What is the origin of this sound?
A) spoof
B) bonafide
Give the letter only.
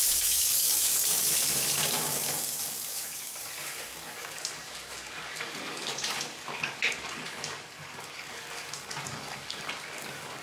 A